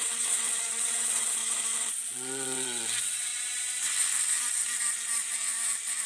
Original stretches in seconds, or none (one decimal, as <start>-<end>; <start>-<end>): 1.4-1.9; 3.3-6.1